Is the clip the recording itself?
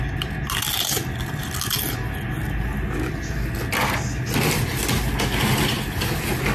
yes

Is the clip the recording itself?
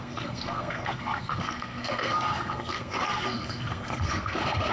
no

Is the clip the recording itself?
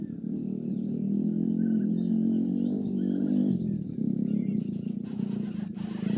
yes